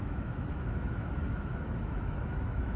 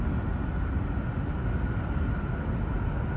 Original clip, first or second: second